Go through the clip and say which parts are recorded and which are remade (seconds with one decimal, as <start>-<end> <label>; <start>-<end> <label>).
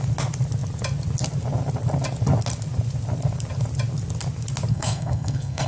0.0-4.7 recorded; 4.7-5.7 remade